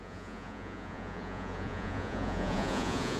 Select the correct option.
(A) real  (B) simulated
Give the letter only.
B